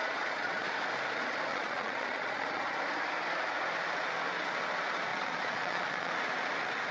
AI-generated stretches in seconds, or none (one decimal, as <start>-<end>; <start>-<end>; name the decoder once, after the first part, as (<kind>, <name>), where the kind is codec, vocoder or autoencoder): 0.0-0.7 (vocoder, Vocos); 1.5-2.8; 5.1-6.1